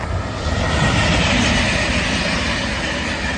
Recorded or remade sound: recorded